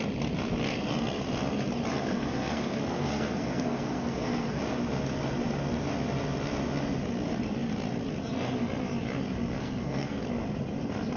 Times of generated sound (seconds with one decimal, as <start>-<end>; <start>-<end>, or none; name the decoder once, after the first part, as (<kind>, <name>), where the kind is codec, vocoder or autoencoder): 2.1-4.6 (codec, SNAC); 9.6-10.2